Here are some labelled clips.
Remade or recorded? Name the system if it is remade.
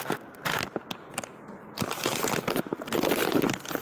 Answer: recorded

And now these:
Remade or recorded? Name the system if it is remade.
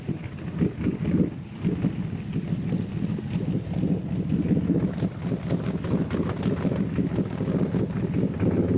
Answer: recorded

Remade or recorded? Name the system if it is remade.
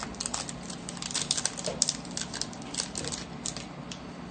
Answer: recorded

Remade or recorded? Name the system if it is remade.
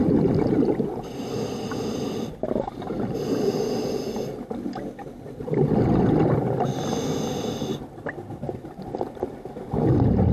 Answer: recorded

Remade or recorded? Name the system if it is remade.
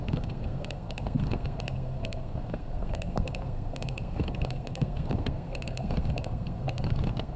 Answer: remade, codec, SNAC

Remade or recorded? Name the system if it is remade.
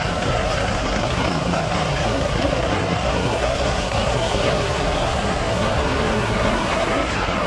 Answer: remade, codec, SNAC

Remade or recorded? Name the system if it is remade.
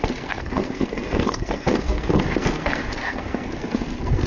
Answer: remade, codec, SNAC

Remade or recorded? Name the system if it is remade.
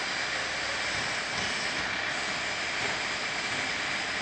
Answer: recorded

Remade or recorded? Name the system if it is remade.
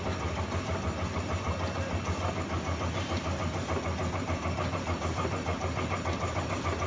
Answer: recorded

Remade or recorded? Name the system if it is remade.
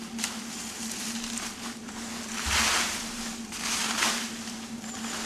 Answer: recorded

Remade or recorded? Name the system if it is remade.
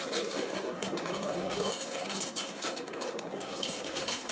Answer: remade, codec, SNAC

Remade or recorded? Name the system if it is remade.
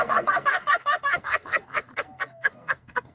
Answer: remade, codec, SNAC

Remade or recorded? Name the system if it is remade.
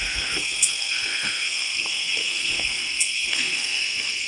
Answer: remade, codec, SNAC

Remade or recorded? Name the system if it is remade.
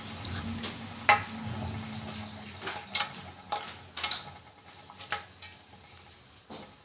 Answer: recorded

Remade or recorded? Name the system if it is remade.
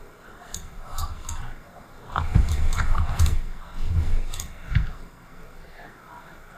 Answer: remade, codec, SNAC